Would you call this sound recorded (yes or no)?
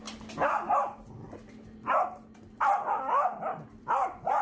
yes